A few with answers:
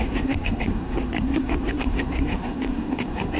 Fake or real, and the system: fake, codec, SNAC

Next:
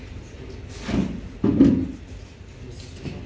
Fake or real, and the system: real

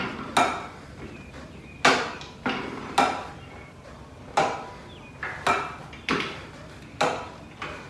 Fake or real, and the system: real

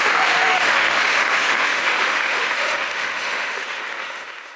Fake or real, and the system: fake, autoencoder, DAC-VAE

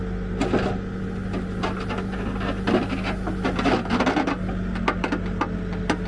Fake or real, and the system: real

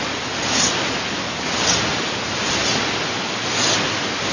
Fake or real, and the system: real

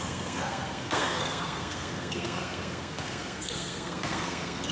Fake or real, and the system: fake, codec, SNAC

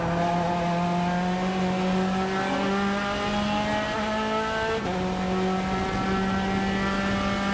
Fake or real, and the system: real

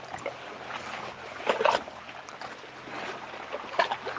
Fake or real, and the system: real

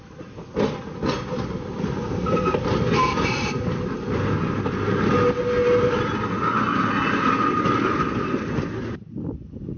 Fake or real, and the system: real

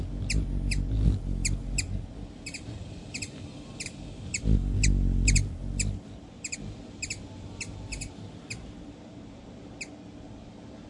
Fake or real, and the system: real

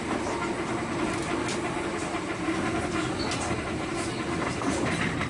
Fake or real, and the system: real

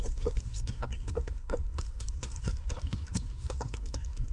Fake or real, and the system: fake, codec, SNAC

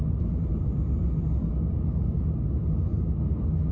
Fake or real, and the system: real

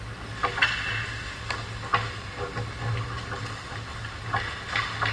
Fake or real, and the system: real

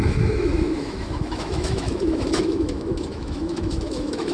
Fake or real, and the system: fake, autoencoder, DAC-VAE